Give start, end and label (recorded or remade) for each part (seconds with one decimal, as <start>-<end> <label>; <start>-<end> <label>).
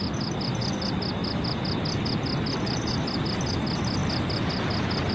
0.0-5.1 recorded